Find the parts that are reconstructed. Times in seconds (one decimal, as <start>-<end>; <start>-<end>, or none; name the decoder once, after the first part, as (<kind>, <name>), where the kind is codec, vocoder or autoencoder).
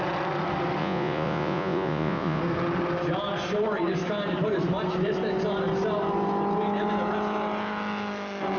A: 0.8-2.4 (vocoder, Vocos)